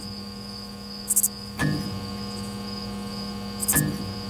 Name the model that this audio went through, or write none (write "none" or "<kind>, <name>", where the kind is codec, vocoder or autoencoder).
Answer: none